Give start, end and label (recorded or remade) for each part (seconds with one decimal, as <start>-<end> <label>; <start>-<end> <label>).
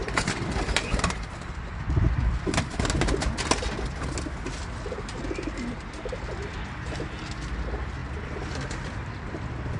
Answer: 0.0-2.7 remade; 2.7-8.0 recorded; 8.0-9.8 remade